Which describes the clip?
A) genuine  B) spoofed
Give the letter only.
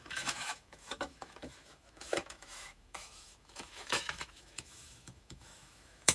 B